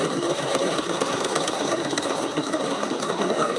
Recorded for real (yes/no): no